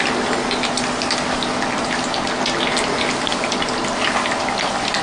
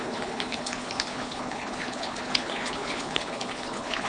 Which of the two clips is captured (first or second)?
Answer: first